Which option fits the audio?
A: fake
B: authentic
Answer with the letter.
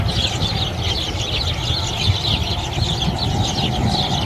B